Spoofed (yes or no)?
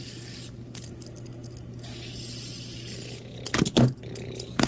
no